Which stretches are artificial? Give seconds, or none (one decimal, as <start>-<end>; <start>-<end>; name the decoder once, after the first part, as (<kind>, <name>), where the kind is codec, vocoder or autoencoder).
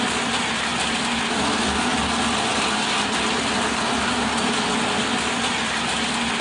none